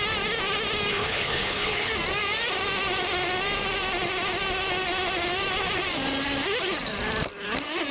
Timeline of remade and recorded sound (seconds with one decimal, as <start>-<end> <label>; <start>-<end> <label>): 0.0-0.9 recorded; 0.9-1.9 remade; 1.9-7.9 recorded